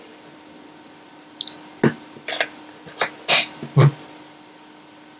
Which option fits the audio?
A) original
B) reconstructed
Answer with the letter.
A